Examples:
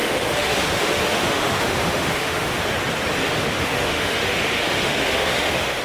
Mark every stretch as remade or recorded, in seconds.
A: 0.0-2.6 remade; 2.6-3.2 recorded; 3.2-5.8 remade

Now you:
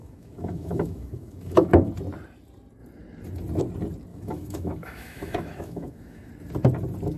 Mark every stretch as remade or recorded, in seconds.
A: 0.0-1.9 remade; 1.9-4.1 recorded; 4.1-6.3 remade; 6.3-7.2 recorded

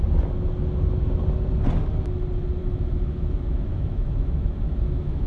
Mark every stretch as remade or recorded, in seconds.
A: 0.0-2.6 recorded; 2.6-5.3 remade

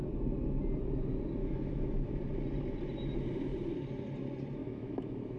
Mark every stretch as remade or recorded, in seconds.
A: 0.0-1.4 recorded; 1.4-2.1 remade; 2.1-4.6 recorded; 4.6-5.4 remade

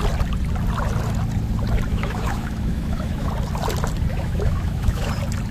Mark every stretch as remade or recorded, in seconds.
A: 0.0-1.9 recorded; 1.9-3.3 remade; 3.3-4.1 recorded; 4.1-5.1 remade; 5.1-5.5 recorded

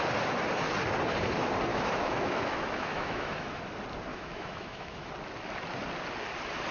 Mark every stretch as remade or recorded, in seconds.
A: 0.0-1.7 recorded; 1.7-3.6 remade; 3.6-4.1 recorded; 4.1-5.1 remade; 5.1-6.7 recorded